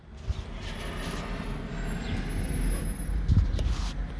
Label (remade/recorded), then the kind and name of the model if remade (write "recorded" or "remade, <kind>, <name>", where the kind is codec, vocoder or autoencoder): recorded